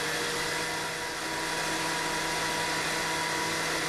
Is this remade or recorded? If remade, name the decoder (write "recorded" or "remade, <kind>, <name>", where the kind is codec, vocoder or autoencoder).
recorded